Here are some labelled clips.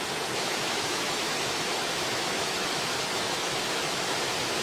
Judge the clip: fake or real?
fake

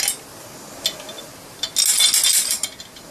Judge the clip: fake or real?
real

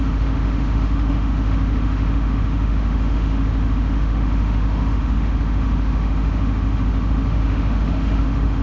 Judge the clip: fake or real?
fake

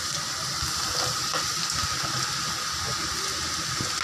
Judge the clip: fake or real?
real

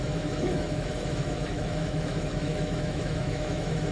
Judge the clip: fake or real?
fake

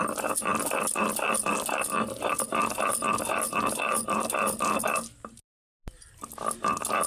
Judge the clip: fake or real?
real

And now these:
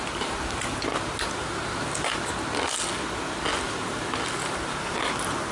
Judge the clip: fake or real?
real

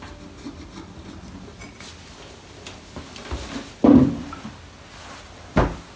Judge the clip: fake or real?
real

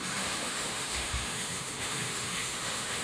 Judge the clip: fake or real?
fake